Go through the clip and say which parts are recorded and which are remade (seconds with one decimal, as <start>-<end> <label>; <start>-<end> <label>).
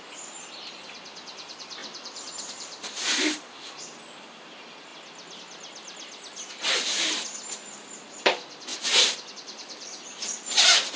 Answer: 0.0-11.0 recorded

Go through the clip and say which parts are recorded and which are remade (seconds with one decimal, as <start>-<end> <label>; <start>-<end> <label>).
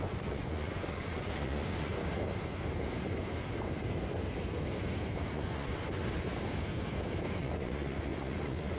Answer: 0.0-1.9 remade; 1.9-5.3 recorded; 5.3-6.0 remade; 6.0-7.4 recorded; 7.4-8.8 remade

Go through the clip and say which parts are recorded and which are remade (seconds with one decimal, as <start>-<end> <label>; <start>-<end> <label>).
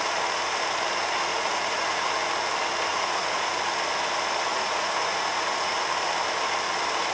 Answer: 0.0-1.3 recorded; 1.3-2.1 remade; 2.1-2.9 recorded; 2.9-3.6 remade; 3.6-4.5 recorded; 4.5-5.7 remade; 5.7-7.1 recorded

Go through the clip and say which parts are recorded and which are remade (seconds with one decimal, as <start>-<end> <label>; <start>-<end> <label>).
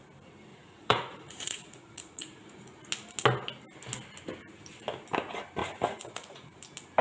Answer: 0.0-0.5 recorded; 0.5-2.8 remade; 2.8-5.6 recorded; 5.6-6.6 remade; 6.6-7.0 recorded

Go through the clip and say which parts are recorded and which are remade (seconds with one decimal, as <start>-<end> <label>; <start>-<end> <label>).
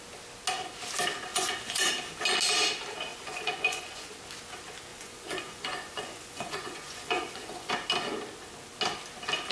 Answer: 0.0-1.3 recorded; 1.3-1.9 remade; 1.9-3.1 recorded; 3.1-4.1 remade; 4.1-4.9 recorded; 4.9-7.7 remade; 7.7-9.5 recorded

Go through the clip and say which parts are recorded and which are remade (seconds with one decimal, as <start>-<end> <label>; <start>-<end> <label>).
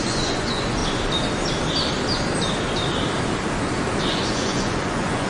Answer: 0.0-0.8 remade; 0.8-4.0 recorded; 4.0-5.3 remade